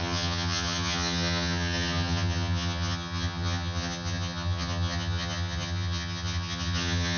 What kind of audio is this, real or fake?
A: fake